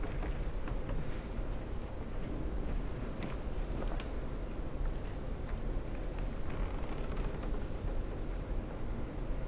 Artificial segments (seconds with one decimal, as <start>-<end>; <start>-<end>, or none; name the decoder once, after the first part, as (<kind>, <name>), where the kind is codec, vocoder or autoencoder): 1.8-2.7 (codec, DAC)